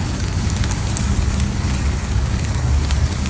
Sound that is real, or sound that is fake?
fake